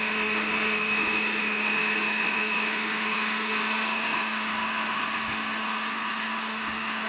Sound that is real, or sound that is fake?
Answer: fake